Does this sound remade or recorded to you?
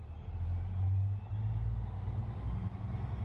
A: recorded